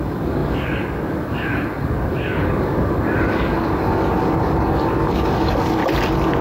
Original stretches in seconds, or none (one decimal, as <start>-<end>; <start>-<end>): 5.8-6.4